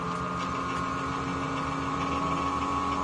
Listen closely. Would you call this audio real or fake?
real